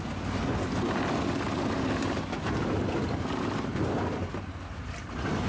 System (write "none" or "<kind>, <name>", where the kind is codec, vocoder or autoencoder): none